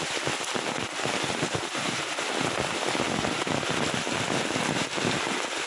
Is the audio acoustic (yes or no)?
yes